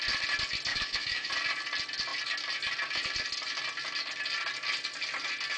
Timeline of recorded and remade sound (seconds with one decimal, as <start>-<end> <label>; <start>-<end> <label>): 0.0-0.7 recorded; 0.7-1.3 remade; 1.3-5.6 recorded